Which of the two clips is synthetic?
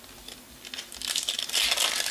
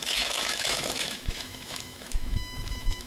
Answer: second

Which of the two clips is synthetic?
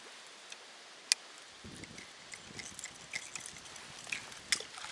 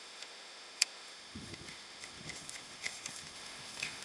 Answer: second